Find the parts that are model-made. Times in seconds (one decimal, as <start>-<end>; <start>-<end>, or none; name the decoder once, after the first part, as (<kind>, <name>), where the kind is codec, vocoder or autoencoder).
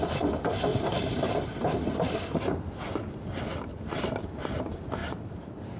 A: 0.7-2.1 (vocoder, BigVGAN v2); 5.0-5.8